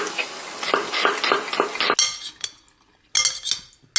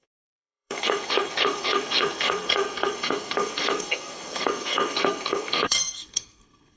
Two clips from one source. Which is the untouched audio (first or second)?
first